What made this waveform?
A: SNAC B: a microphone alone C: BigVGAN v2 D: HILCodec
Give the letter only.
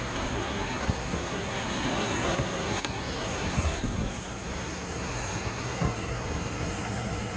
A